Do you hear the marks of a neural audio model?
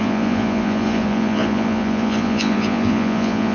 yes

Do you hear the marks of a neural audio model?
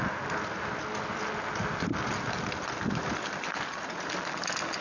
no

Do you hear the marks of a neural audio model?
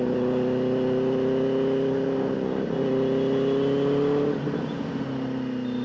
no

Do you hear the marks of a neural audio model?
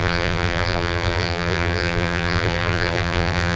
yes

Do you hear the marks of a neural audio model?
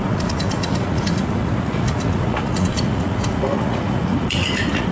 yes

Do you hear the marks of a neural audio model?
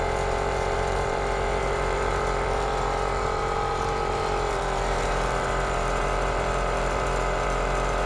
yes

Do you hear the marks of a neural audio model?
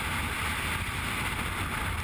no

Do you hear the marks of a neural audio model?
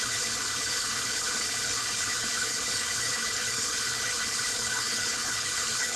yes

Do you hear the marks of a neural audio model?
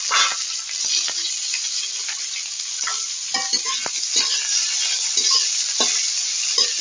no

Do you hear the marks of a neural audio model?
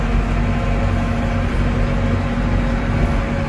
no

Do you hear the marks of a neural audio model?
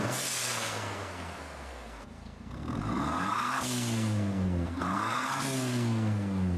yes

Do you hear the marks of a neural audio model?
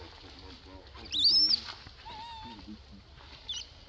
no